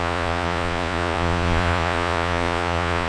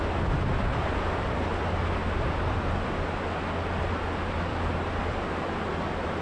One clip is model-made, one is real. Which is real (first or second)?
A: second